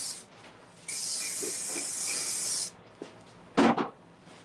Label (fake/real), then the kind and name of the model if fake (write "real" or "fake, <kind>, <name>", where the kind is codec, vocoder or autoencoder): real